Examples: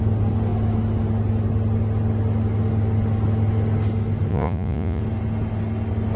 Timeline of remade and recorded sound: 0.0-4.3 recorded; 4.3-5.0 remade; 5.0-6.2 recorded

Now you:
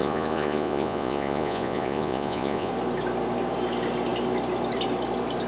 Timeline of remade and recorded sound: 0.0-2.7 remade; 2.7-5.5 recorded

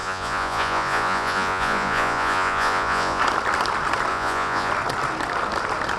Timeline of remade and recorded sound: 0.0-3.2 remade; 3.2-4.1 recorded; 4.1-4.7 remade; 4.7-6.0 recorded

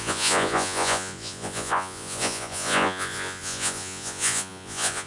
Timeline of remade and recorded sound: 0.0-5.1 remade

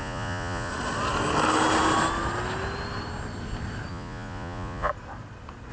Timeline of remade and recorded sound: 0.0-0.7 remade; 0.7-3.9 recorded; 3.9-4.9 remade; 4.9-5.7 recorded

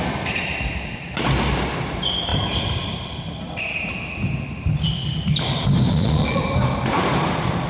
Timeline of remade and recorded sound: 0.0-5.9 recorded; 5.9-6.4 remade; 6.4-7.7 recorded